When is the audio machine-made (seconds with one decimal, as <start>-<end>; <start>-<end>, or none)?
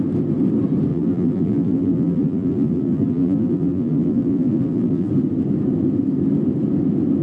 0.9-5.1